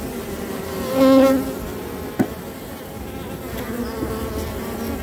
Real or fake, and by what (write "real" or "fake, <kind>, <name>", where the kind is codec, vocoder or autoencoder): real